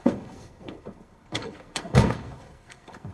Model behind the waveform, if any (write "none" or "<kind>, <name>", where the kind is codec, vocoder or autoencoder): codec, SNAC